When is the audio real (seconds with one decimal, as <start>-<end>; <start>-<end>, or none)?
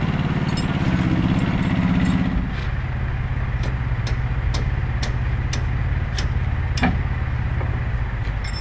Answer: 0.0-8.6